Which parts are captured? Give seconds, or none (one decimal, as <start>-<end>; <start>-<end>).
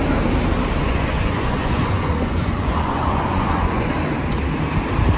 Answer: 0.0-0.8; 3.9-5.2